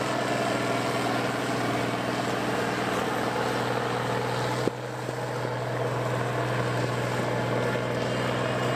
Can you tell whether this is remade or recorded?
recorded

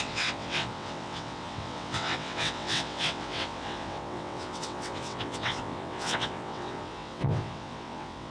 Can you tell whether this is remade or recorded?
remade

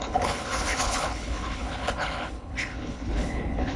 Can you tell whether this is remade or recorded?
remade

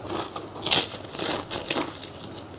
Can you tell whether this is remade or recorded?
recorded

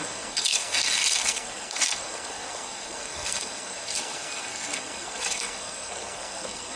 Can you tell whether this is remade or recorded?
remade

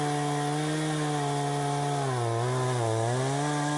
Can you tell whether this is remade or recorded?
recorded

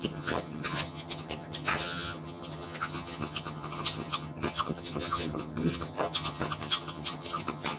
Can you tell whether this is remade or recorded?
remade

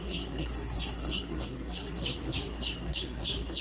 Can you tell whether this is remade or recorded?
remade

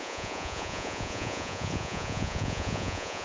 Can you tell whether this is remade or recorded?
remade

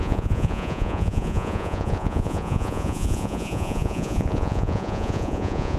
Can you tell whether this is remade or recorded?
remade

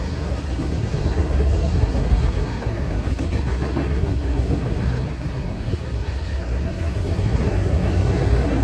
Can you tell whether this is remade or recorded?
remade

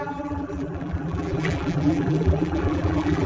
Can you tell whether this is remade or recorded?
remade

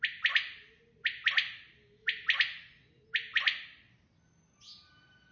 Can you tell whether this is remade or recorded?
recorded